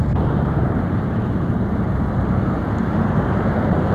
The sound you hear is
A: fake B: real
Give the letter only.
A